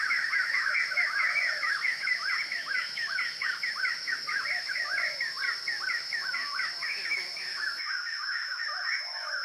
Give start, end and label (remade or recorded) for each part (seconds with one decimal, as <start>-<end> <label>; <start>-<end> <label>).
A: 0.0-5.4 remade; 5.4-5.9 recorded; 5.9-9.4 remade